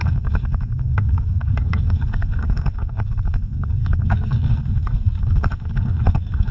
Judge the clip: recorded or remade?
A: remade